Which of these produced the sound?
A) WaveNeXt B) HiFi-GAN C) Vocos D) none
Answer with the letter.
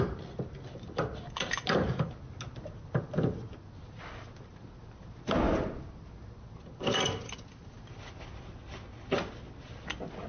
D